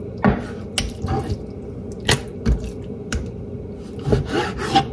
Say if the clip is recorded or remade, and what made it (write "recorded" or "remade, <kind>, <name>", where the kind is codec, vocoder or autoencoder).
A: recorded